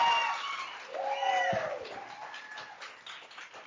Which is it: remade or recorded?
recorded